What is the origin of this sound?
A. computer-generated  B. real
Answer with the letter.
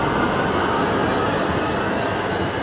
B